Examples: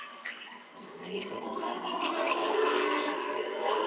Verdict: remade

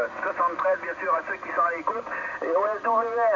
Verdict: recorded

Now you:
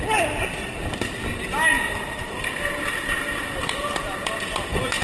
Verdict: recorded